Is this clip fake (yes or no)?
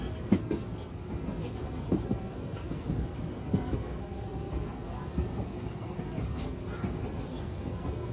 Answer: yes